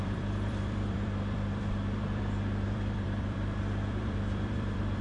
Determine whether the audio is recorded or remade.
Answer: remade